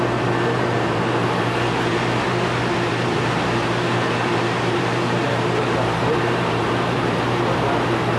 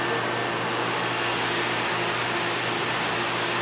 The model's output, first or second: first